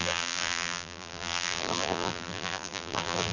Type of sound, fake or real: fake